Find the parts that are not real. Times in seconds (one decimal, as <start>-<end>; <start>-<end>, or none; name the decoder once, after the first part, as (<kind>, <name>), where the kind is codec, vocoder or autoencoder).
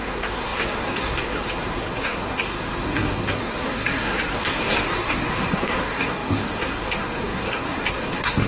0.0-8.5 (codec, SNAC)